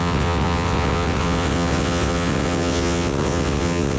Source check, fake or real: fake